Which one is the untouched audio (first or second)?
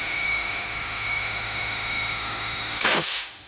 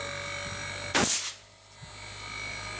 second